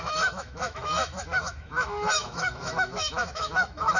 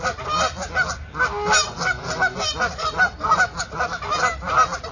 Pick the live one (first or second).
second